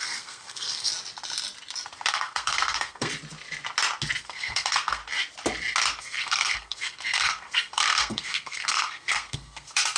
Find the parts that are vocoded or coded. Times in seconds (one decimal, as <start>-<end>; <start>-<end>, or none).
0.0-0.9; 2.1-3.1; 4.2-5.0; 6.0-10.0